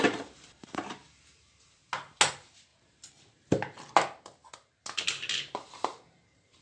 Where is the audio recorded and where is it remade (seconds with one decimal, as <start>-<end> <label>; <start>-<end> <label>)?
0.0-1.8 remade; 1.8-2.3 recorded; 2.3-2.7 remade; 2.7-5.7 recorded; 5.7-6.6 remade